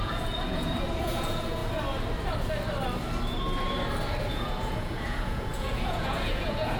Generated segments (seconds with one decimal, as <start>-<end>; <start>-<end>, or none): 0.0-1.6; 4.2-6.8